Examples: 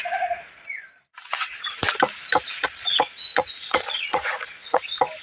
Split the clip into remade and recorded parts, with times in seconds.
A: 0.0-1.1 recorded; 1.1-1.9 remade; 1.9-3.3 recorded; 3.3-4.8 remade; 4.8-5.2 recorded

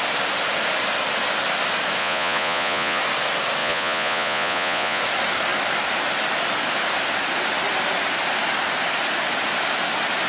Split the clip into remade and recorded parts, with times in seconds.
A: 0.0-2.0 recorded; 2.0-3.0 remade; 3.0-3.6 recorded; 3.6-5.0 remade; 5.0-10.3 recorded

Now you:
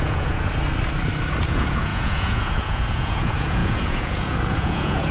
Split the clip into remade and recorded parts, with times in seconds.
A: 0.0-0.5 remade; 0.5-1.4 recorded; 1.4-5.1 remade

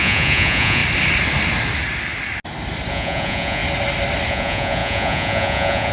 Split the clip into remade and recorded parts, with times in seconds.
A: 0.0-0.8 remade; 0.8-2.9 recorded; 2.9-3.6 remade; 3.6-4.3 recorded; 4.3-5.9 remade